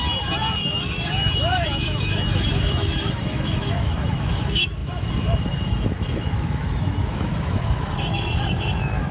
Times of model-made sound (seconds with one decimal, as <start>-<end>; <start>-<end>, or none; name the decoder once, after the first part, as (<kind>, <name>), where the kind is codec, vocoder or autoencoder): 0.0-9.1 (autoencoder, DAC-VAE)